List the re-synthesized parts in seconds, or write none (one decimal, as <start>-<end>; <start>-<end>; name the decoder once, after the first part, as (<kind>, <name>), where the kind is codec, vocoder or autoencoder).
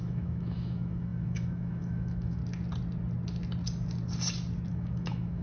0.0-2.4 (autoencoder, DAC-VAE); 4.7-5.4